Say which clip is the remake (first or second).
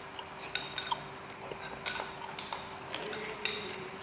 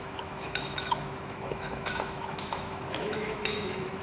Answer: second